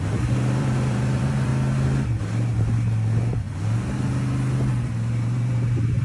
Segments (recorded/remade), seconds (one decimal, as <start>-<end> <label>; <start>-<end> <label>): 0.0-1.5 remade; 1.5-4.7 recorded; 4.7-6.0 remade